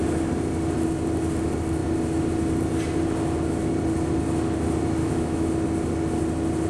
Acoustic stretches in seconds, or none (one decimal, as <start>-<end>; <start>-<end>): 0.0-5.0; 5.5-6.7